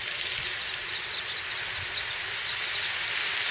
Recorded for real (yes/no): yes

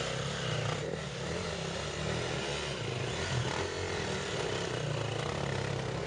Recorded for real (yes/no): yes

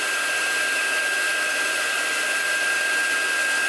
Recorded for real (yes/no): yes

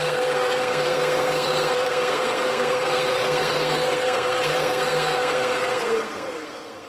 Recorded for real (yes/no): no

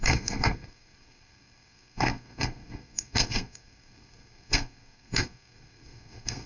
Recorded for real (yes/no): no